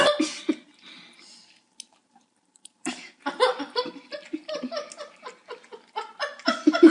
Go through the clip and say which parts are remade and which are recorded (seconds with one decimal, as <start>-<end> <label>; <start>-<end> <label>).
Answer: 0.0-2.0 recorded; 2.0-3.5 remade; 3.5-6.9 recorded